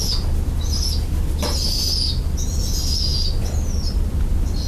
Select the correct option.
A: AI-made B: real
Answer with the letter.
B